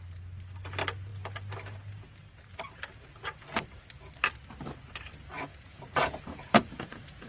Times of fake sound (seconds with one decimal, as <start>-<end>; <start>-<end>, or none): 5.5-7.3